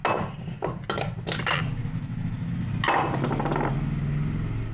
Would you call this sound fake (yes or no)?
no